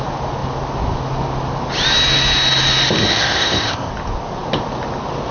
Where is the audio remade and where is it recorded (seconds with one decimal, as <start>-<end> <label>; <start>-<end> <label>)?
0.0-3.1 recorded; 3.1-3.9 remade; 3.9-5.3 recorded